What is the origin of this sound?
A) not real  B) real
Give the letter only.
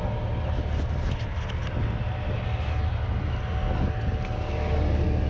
B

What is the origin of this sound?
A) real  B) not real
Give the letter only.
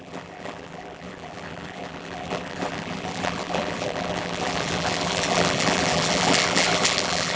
B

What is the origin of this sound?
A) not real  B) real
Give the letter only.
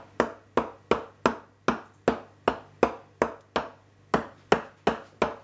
B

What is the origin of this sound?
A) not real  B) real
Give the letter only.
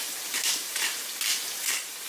A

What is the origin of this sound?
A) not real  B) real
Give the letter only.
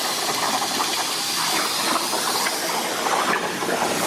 B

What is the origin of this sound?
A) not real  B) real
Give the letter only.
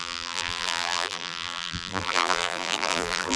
A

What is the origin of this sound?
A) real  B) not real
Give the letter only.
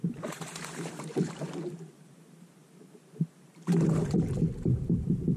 B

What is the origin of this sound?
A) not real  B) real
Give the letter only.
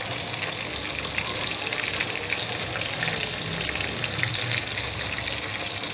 B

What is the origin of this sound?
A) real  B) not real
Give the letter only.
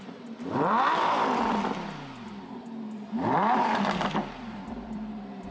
B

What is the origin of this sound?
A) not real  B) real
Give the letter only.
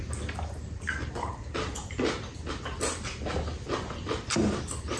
B